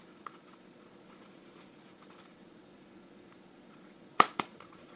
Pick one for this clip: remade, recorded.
remade